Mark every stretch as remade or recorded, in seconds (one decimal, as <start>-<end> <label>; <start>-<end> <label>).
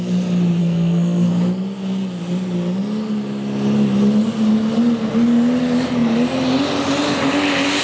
0.0-0.6 recorded; 0.6-1.3 remade; 1.3-7.8 recorded